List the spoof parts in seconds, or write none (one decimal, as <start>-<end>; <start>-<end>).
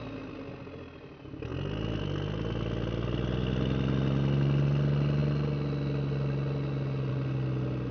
none